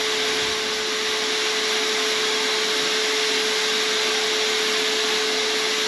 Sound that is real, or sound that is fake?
real